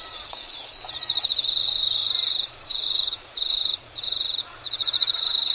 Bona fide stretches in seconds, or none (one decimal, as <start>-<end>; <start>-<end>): none

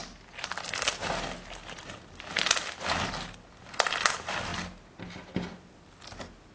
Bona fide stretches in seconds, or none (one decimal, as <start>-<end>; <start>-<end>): 0.0-6.5

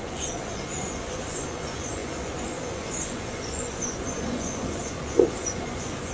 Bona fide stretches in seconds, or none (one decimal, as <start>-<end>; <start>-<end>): none